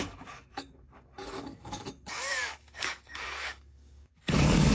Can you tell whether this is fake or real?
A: fake